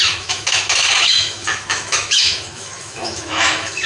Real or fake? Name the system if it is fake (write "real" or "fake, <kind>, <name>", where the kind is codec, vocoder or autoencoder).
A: fake, autoencoder, DAC-VAE